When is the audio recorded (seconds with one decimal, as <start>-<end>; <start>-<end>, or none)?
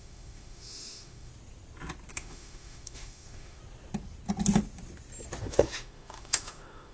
1.3-2.1; 3.6-5.4